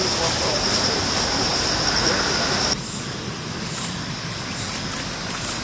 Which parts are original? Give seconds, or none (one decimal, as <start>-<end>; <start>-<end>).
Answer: 0.0-5.6